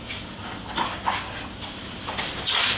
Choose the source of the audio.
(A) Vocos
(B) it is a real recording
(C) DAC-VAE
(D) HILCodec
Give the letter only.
B